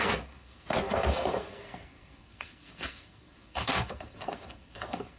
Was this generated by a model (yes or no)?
yes